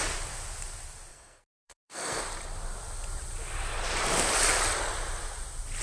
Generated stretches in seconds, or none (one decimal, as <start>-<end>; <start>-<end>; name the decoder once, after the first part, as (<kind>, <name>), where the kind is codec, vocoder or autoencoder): 1.1-2.2 (codec, SNAC)